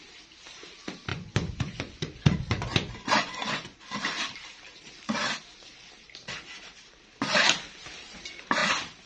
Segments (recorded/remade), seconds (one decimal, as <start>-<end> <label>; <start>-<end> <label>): 0.0-1.1 recorded; 1.1-3.8 remade; 3.8-9.1 recorded